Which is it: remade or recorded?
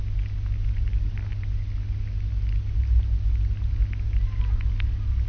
recorded